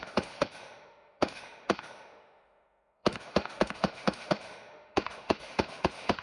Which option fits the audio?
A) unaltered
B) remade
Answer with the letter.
B